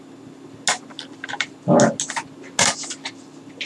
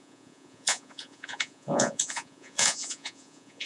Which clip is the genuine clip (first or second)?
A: first